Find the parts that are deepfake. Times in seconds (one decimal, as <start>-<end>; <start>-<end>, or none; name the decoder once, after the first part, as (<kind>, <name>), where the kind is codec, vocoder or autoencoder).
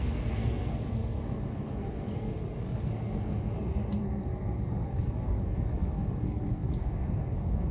0.0-7.7 (codec, SNAC)